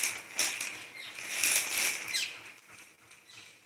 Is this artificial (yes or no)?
no